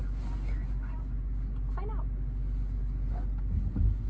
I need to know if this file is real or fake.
real